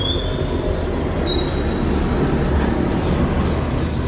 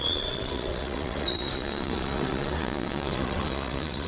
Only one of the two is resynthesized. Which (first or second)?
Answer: second